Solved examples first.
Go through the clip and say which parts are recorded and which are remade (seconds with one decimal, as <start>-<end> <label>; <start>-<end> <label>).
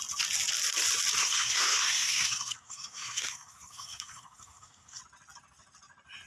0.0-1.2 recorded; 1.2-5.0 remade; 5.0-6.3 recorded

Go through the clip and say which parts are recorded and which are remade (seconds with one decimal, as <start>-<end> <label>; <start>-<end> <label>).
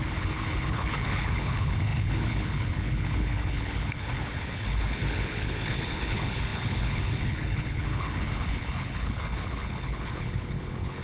0.0-11.0 remade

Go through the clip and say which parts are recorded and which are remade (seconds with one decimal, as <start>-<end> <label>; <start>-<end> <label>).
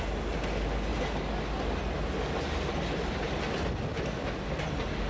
0.0-5.1 recorded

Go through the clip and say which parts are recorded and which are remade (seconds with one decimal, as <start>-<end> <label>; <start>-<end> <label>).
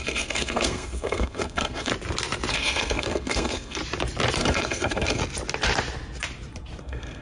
0.0-1.9 remade; 1.9-2.5 recorded; 2.5-3.8 remade; 3.8-4.4 recorded; 4.4-5.2 remade; 5.2-6.8 recorded; 6.8-7.2 remade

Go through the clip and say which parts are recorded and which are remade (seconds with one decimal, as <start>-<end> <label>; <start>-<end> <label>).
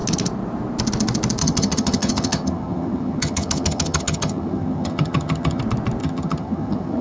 0.0-1.4 recorded; 1.4-5.6 remade; 5.6-6.0 recorded; 6.0-7.0 remade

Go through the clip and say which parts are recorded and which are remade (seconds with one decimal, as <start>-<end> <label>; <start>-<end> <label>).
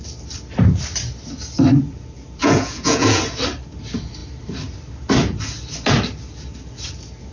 0.0-2.4 recorded; 2.4-3.2 remade; 3.2-7.3 recorded